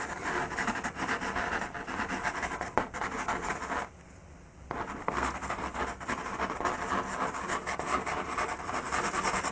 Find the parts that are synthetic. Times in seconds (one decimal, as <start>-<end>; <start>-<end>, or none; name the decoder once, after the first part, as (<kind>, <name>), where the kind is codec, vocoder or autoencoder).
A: 5.0-5.8 (codec, SNAC)